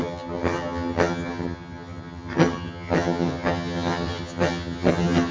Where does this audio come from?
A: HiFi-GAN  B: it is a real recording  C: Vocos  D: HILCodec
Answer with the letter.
A